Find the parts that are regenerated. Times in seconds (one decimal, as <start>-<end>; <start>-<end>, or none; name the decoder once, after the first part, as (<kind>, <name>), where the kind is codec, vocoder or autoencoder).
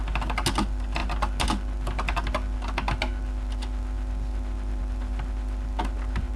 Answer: none